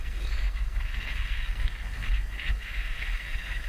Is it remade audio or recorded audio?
remade